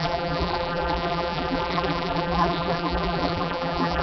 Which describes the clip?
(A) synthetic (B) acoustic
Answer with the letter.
A